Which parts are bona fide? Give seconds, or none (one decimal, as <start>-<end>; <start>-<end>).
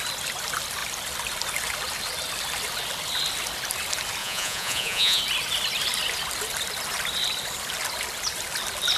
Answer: 0.0-4.2; 5.2-9.0